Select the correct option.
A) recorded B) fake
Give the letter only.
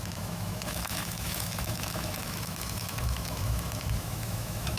B